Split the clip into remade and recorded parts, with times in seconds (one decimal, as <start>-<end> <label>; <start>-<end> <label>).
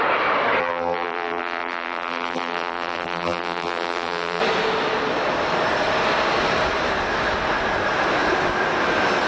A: 0.0-0.6 recorded; 0.6-4.4 remade; 4.4-9.3 recorded